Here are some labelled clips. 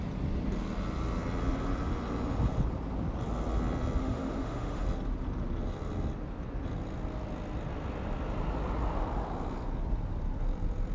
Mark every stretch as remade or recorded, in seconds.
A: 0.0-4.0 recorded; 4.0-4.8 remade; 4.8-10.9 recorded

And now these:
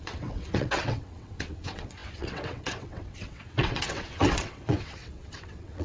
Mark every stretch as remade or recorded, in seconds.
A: 0.0-5.8 remade

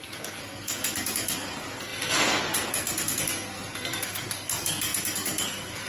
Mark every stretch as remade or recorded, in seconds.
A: 0.0-5.9 remade

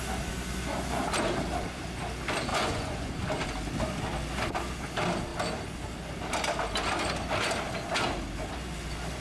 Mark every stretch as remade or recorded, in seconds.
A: 0.0-2.5 recorded; 2.5-3.1 remade; 3.1-9.2 recorded